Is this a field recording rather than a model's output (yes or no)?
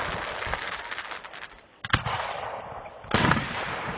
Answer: yes